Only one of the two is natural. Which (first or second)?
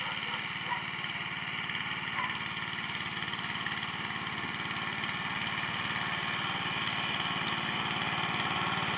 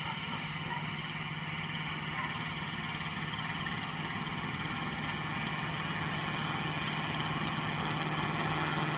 first